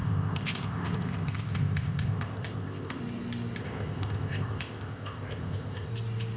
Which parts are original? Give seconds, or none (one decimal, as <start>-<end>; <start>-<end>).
3.0-3.6; 5.9-6.4